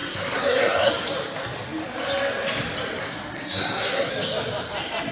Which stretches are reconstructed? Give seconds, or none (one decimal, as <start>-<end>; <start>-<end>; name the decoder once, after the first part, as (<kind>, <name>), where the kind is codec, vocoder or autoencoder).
0.0-0.9 (codec, SNAC); 3.0-4.1